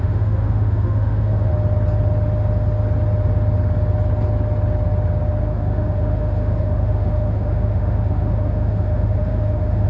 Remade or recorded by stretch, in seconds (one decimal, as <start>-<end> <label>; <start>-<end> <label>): 0.0-1.5 remade; 1.5-5.4 recorded; 5.4-9.9 remade